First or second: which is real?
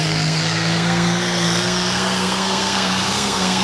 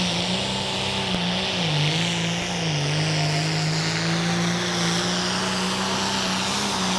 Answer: second